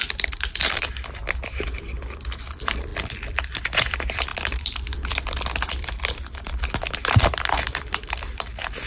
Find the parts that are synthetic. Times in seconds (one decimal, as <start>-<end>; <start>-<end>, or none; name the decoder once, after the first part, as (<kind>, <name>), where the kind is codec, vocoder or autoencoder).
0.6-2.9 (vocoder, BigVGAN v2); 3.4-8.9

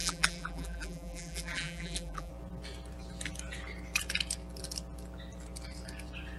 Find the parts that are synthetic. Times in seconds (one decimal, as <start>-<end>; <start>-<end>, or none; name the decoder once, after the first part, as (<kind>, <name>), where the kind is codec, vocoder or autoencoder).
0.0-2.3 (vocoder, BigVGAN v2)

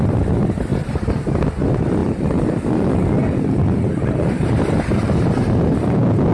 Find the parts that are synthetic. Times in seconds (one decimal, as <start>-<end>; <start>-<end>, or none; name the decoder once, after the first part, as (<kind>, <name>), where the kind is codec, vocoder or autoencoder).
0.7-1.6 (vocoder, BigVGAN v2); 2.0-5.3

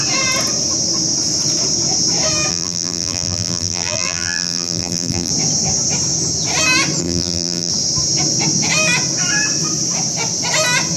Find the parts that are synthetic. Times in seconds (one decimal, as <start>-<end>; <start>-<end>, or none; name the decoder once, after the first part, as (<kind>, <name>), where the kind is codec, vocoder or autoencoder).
2.5-5.3 (vocoder, BigVGAN v2); 7.0-7.7

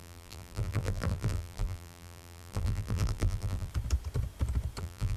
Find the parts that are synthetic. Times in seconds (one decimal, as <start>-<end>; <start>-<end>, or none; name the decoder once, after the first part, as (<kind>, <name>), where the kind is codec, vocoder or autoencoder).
0.0-3.7 (vocoder, BigVGAN v2); 4.8-5.2